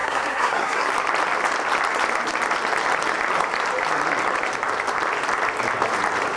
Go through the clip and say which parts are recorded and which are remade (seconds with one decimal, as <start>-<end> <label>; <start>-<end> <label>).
0.0-0.9 remade; 0.9-6.4 recorded

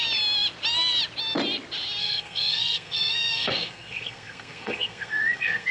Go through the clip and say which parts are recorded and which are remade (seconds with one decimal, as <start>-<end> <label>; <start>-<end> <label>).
0.0-2.0 recorded; 2.0-5.7 remade

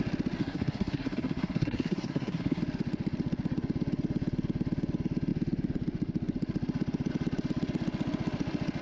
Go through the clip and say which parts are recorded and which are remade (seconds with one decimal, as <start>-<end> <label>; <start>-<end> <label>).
0.0-0.4 recorded; 0.4-2.6 remade; 2.6-8.8 recorded

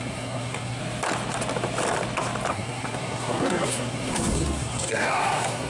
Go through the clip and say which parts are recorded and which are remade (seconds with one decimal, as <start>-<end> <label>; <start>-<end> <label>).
0.0-0.8 remade; 0.8-2.5 recorded; 2.5-5.7 remade

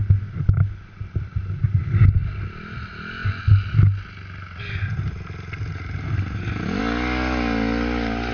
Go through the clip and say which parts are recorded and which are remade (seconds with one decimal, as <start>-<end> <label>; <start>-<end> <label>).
0.0-8.3 recorded

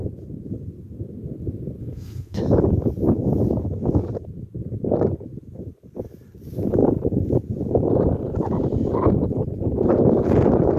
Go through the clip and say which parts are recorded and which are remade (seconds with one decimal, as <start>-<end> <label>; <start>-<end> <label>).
0.0-1.8 recorded; 1.8-2.4 remade; 2.4-10.8 recorded

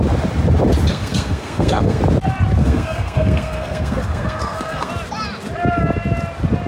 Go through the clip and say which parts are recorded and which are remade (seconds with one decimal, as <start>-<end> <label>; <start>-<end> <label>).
0.0-0.9 recorded; 0.9-2.0 remade; 2.0-2.6 recorded; 2.6-4.9 remade; 4.9-6.7 recorded